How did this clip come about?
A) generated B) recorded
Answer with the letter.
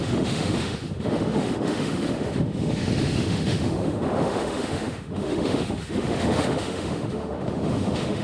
A